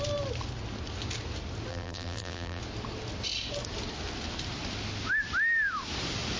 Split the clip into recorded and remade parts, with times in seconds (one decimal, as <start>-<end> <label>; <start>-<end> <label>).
0.0-1.7 recorded; 1.7-2.6 remade; 2.6-6.4 recorded